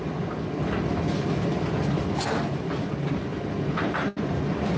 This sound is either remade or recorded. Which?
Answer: recorded